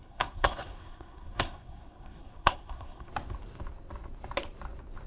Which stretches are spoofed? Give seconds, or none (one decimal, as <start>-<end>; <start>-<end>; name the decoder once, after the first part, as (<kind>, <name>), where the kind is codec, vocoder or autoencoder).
0.0-3.1 (codec, SNAC)